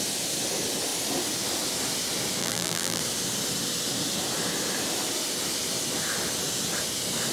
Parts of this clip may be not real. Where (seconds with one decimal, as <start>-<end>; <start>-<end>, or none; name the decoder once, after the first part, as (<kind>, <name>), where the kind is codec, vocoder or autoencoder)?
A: 2.4-3.0 (vocoder, BigVGAN v2)